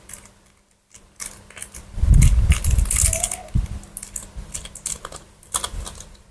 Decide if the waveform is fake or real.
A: real